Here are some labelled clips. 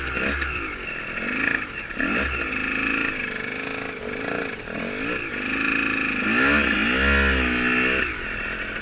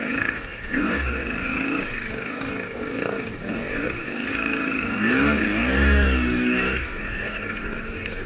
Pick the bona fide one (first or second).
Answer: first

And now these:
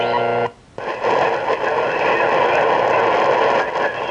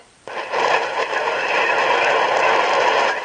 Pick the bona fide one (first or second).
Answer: first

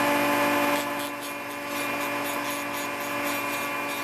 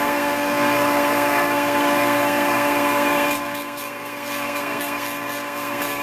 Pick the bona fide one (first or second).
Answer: first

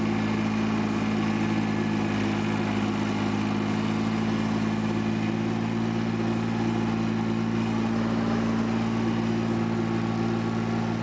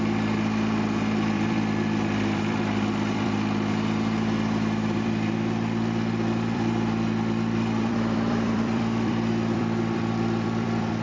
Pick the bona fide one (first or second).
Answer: first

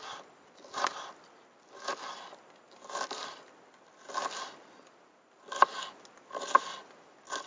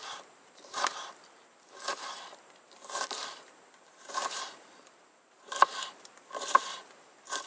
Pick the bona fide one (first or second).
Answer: first